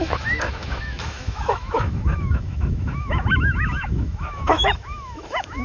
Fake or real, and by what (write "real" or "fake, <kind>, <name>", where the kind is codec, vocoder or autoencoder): fake, autoencoder, DAC-VAE